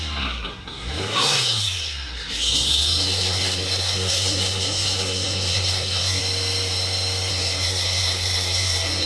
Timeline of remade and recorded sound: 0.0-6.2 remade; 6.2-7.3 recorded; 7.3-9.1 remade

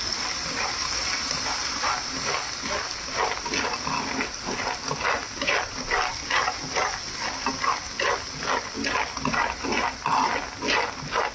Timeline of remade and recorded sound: 0.0-11.3 recorded

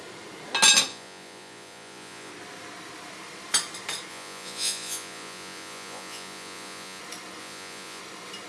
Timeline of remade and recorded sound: 0.0-0.9 recorded; 0.9-2.3 remade; 2.3-4.1 recorded; 4.1-7.0 remade; 7.0-7.4 recorded; 7.4-8.0 remade; 8.0-8.5 recorded